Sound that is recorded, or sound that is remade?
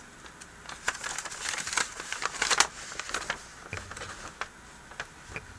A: recorded